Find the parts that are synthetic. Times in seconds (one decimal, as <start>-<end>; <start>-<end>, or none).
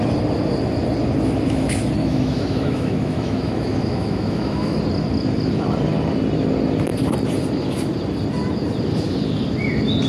2.0-4.8